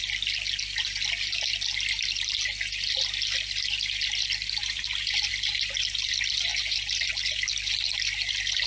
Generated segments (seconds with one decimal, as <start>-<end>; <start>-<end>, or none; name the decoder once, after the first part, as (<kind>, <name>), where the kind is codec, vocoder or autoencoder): 4.6-5.3 (vocoder, BigVGAN v2)